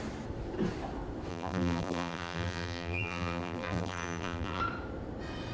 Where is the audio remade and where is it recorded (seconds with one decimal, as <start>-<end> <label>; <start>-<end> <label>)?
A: 0.0-1.3 recorded; 1.3-4.6 remade; 4.6-5.5 recorded